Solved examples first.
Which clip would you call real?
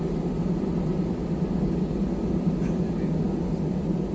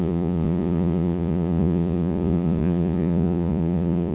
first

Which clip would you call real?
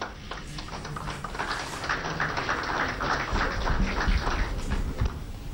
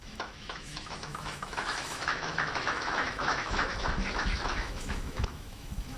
first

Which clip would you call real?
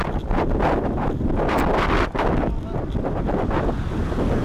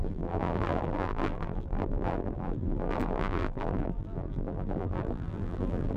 first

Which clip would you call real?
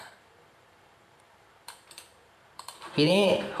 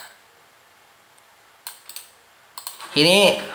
second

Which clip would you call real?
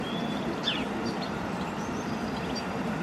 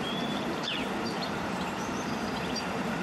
first